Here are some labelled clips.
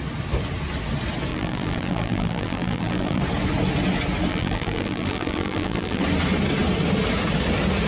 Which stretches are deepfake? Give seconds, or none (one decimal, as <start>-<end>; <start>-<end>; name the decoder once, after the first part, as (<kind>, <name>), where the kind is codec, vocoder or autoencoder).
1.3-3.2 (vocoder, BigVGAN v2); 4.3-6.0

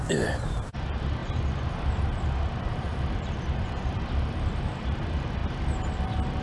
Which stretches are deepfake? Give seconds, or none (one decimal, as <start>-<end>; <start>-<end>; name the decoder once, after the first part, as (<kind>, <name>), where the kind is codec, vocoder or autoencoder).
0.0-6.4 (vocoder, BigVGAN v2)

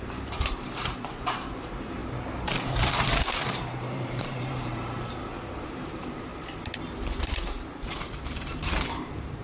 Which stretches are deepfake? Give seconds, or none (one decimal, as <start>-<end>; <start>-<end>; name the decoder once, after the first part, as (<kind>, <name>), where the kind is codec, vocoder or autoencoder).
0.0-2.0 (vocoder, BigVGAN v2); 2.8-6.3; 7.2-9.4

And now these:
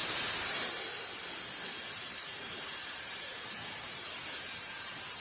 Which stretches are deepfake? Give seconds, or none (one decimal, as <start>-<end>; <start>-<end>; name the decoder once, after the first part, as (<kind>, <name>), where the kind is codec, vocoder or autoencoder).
0.0-1.0 (vocoder, BigVGAN v2); 1.8-5.2

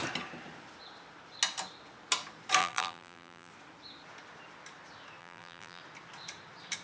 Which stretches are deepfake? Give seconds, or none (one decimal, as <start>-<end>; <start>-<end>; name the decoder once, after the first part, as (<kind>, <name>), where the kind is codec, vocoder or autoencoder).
2.6-3.5 (vocoder, BigVGAN v2); 5.2-5.8